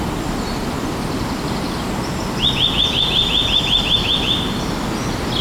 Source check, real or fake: real